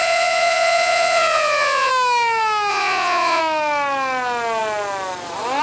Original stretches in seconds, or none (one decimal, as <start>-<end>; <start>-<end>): 1.9-2.7; 3.4-5.6